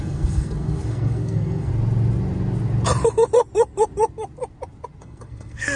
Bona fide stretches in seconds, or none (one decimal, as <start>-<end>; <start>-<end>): 1.7-5.0